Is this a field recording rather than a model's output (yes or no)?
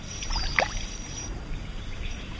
no